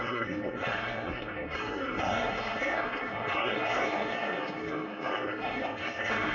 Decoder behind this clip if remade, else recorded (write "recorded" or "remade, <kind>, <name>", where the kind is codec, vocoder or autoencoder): remade, codec, SNAC